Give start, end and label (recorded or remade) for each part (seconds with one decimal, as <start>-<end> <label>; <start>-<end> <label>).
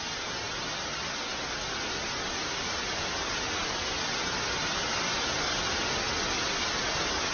0.0-7.3 recorded